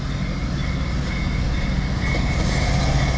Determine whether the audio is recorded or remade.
recorded